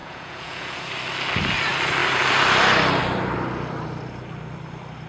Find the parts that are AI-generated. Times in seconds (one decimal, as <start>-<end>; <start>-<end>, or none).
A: 0.0-0.9